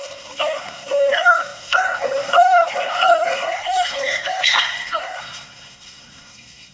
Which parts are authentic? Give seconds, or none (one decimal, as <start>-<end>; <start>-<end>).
none

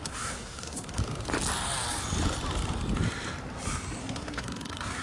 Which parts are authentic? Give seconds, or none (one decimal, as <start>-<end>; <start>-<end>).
1.0-4.0

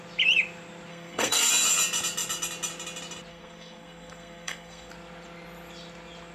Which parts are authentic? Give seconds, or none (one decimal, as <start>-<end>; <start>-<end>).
0.0-0.9; 1.5-3.3; 4.9-6.3

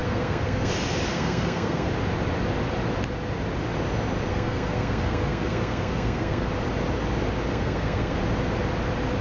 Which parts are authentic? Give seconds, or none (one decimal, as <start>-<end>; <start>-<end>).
0.7-1.1; 1.9-4.3; 6.5-7.5; 8.2-9.2

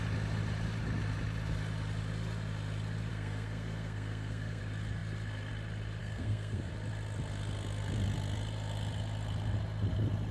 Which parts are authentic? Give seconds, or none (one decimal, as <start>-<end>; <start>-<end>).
0.0-3.1; 4.6-6.0; 6.7-10.3

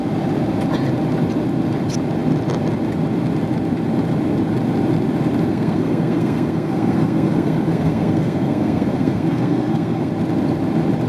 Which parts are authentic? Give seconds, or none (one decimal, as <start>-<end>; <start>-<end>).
0.0-5.5; 10.1-11.1

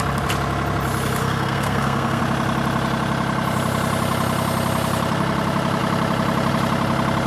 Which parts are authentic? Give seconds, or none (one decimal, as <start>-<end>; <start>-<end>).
0.0-1.2; 2.2-7.3

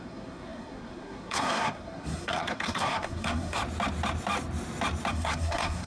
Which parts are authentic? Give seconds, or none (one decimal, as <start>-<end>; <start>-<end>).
3.6-5.1